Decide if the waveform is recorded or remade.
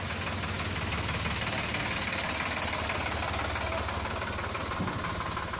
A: recorded